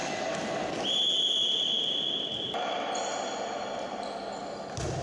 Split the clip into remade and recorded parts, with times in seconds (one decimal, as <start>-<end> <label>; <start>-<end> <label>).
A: 0.0-5.0 recorded